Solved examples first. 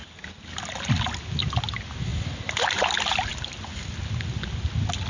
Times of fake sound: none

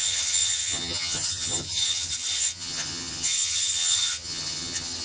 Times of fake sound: 0.0-5.0 (vocoder, HiFi-GAN)

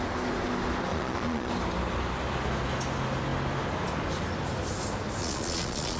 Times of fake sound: 0.9-1.5 (vocoder, Vocos); 5.2-6.0

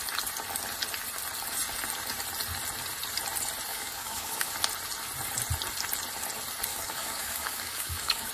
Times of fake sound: 3.7-4.5 (codec, DAC); 6.7-8.3